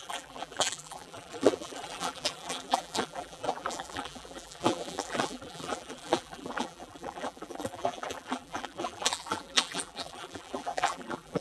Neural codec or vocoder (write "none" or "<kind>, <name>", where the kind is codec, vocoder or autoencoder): vocoder, BigVGAN v2